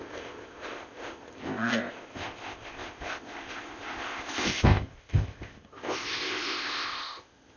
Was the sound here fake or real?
fake